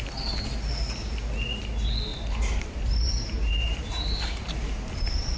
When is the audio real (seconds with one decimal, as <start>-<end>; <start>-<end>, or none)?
0.0-2.1

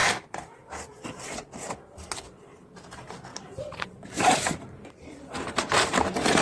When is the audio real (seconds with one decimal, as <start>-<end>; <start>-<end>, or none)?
0.0-3.3

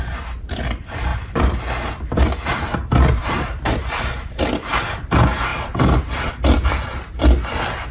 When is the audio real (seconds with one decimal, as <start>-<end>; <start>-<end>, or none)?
0.0-1.1; 1.6-3.2; 4.4-5.5; 6.3-7.9

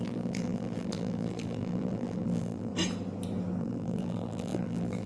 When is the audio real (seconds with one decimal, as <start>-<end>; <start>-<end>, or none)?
2.7-3.6